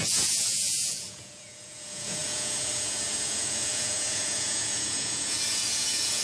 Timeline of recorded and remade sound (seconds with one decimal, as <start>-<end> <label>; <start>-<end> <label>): 0.0-6.2 remade

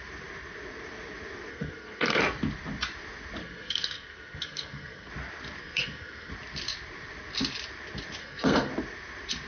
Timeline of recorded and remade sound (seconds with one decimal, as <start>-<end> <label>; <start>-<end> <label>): 0.0-1.5 recorded; 1.5-2.2 remade; 2.2-3.4 recorded; 3.4-5.1 remade; 5.1-5.6 recorded; 5.6-6.3 remade; 6.3-8.2 recorded; 8.2-8.7 remade; 8.7-9.5 recorded

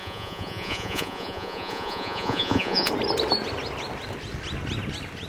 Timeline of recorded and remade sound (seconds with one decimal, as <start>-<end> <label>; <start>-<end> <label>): 0.0-2.9 remade; 2.9-5.3 recorded

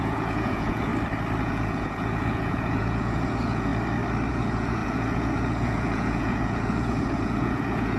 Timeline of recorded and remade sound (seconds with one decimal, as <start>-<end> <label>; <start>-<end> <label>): 0.0-0.9 remade; 0.9-1.4 recorded; 1.4-3.7 remade; 3.7-4.3 recorded; 4.3-8.0 remade